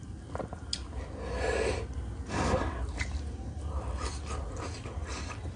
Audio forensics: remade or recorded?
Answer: recorded